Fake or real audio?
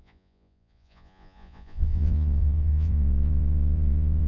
fake